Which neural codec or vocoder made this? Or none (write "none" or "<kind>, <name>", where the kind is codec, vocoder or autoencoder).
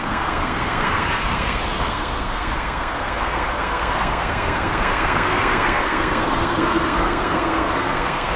codec, SNAC